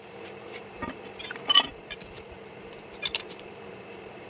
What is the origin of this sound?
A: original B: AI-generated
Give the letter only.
B